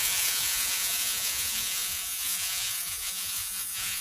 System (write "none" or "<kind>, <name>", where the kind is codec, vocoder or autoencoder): vocoder, Vocos